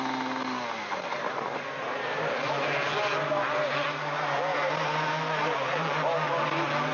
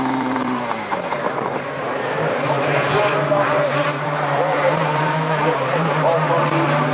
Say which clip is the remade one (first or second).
second